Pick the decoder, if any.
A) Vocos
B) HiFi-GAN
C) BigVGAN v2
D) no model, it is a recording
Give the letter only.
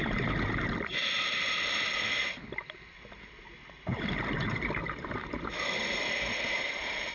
D